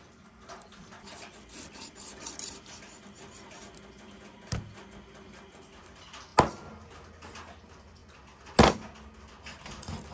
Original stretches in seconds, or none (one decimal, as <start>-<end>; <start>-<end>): 0.0-10.1